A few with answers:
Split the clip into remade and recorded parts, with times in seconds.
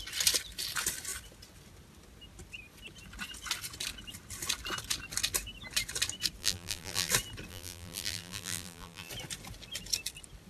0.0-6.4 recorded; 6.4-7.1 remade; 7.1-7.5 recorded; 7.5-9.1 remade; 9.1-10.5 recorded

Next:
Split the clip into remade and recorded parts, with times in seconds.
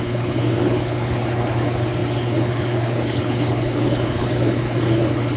0.0-5.4 remade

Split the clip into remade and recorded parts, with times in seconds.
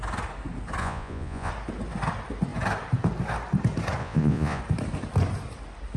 0.0-0.8 recorded; 0.8-1.5 remade; 1.5-4.0 recorded; 4.0-4.6 remade; 4.6-6.0 recorded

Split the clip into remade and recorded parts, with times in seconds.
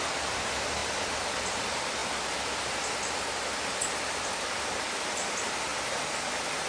0.0-0.8 remade; 0.8-1.6 recorded; 1.6-2.0 remade; 2.0-4.5 recorded; 4.5-6.7 remade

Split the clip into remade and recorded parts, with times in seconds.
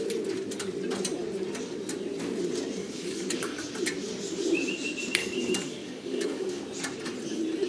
0.0-2.8 recorded; 2.8-3.7 remade; 3.7-5.2 recorded; 5.2-6.6 remade; 6.6-7.7 recorded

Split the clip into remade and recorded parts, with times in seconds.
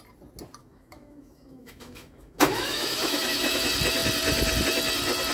0.0-0.6 recorded; 0.6-3.6 remade; 3.6-5.3 recorded